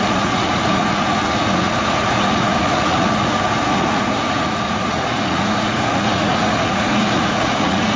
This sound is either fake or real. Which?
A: fake